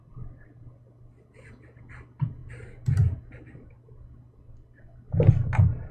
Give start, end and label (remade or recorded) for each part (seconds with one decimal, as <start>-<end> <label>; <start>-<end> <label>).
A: 0.0-5.9 recorded